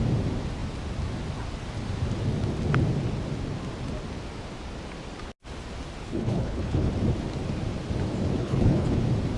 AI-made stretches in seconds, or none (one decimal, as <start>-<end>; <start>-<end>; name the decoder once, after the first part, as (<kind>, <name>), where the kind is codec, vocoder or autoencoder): 6.0-6.9 (codec, HILCodec); 8.4-9.0